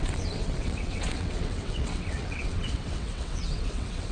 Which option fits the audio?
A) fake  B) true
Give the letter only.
A